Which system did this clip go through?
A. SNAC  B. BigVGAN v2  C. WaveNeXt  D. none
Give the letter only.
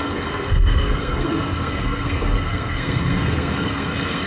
A